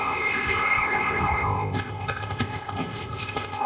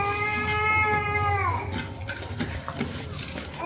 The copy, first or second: first